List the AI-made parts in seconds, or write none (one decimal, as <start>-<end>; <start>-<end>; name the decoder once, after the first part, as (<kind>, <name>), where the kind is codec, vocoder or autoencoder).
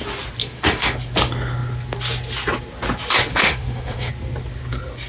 0.4-1.0 (autoencoder, DAC-VAE); 3.3-4.1